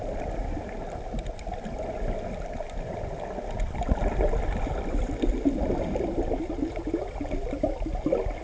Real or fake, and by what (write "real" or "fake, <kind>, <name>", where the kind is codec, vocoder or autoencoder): real